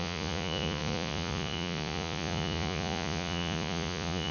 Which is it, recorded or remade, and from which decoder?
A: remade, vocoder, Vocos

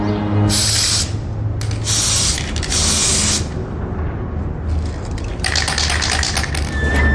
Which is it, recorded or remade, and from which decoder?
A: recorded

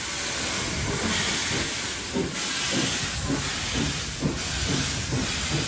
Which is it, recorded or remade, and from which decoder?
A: recorded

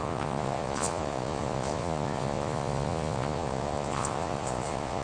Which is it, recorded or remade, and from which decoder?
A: remade, vocoder, Vocos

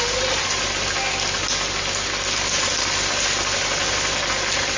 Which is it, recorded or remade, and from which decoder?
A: recorded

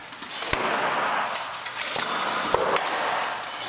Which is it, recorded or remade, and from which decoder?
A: recorded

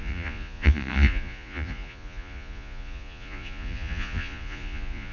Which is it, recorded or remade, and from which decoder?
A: remade, vocoder, Vocos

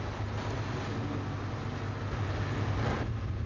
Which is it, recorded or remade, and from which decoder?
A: recorded